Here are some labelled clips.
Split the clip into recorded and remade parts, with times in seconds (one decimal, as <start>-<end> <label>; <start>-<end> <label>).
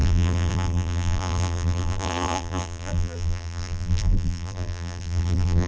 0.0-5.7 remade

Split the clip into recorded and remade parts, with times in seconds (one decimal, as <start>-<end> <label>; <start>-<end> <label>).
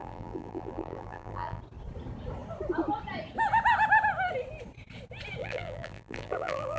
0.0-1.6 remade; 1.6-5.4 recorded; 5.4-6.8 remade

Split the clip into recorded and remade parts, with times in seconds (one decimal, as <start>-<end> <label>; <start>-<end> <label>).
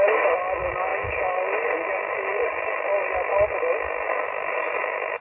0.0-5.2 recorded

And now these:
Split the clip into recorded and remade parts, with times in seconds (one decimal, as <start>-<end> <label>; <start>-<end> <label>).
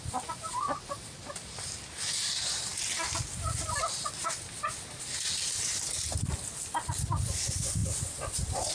0.0-2.7 remade; 2.7-6.9 recorded; 6.9-8.7 remade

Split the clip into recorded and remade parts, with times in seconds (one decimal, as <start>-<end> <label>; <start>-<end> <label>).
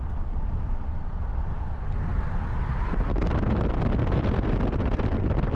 0.0-5.6 recorded